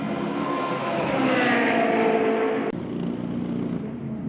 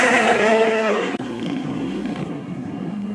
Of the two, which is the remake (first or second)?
second